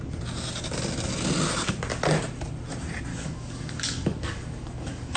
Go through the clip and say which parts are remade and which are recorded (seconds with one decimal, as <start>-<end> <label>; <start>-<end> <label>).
0.0-3.1 recorded; 3.1-5.2 remade